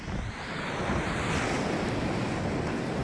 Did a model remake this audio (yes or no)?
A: no